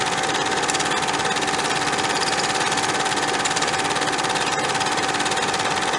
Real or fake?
real